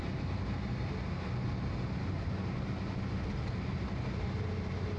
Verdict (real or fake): real